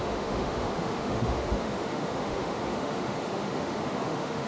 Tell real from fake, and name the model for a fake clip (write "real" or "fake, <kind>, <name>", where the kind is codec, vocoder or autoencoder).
fake, autoencoder, DAC-VAE